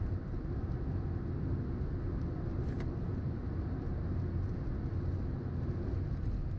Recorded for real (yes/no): yes